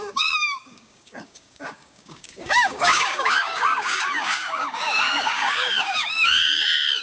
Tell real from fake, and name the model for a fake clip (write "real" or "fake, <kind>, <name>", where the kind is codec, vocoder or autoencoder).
fake, codec, DAC